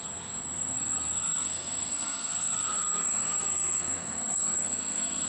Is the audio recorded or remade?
remade